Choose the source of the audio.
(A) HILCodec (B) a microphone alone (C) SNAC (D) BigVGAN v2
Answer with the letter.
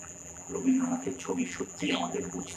D